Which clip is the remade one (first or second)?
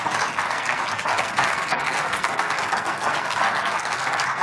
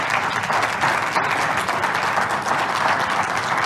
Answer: first